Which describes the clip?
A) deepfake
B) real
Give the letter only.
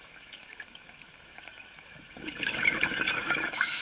A